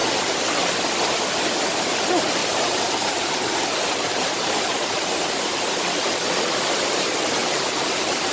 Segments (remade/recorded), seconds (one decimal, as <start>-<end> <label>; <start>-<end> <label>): 0.0-2.4 recorded; 2.4-5.5 remade; 5.5-7.4 recorded; 7.4-8.3 remade